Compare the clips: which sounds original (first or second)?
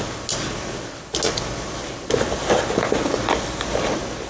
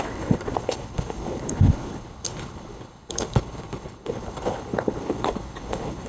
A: first